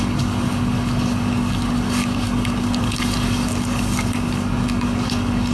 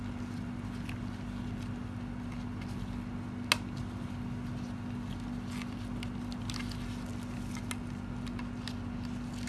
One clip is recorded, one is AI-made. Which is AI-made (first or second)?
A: first